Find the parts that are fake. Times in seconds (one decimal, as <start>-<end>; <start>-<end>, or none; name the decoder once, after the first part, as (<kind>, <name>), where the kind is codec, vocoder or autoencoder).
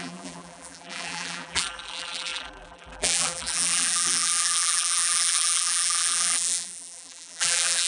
0.0-7.9 (vocoder, BigVGAN v2)